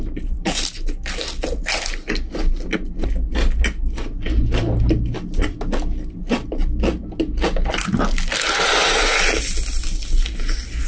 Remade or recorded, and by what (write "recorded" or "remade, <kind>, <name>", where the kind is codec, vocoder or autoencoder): recorded